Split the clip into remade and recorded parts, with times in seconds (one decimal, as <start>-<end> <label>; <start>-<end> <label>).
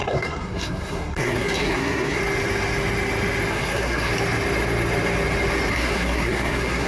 0.0-2.2 remade; 2.2-3.5 recorded; 3.5-4.1 remade; 4.1-5.7 recorded; 5.7-6.9 remade